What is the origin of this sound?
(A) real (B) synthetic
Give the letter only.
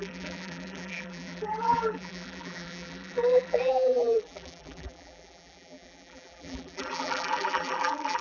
B